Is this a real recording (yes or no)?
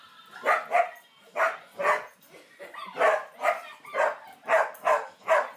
yes